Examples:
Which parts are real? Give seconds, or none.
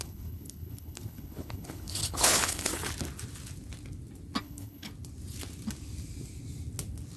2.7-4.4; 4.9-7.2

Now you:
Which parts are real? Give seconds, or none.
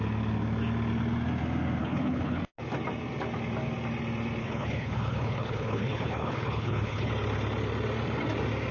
0.0-1.8; 2.4-4.4; 7.1-8.7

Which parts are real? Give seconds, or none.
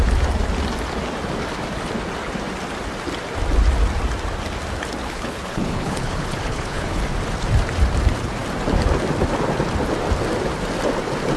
0.0-5.0; 7.0-11.4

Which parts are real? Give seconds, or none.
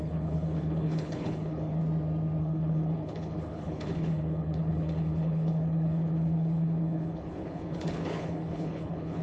1.8-2.4